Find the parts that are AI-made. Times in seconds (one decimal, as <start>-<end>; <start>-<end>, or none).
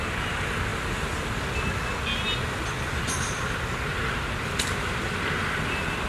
none